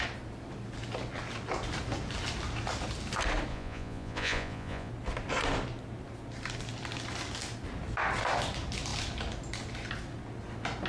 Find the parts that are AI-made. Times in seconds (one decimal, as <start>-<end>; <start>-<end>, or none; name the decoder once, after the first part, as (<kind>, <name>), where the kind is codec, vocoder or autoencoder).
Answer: 3.5-4.9 (vocoder, Vocos)